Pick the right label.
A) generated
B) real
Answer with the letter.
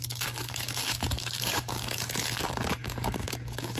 A